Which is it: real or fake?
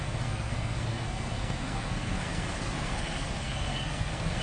fake